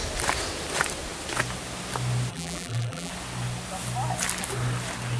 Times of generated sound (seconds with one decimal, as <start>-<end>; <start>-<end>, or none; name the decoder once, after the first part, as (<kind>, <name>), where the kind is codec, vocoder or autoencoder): 2.3-3.1 (vocoder, BigVGAN v2)